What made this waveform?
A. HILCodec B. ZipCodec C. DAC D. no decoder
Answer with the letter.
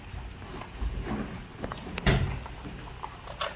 D